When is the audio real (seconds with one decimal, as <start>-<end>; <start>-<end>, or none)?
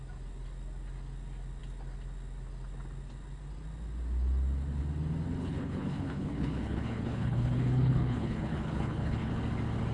0.0-5.4; 9.3-9.9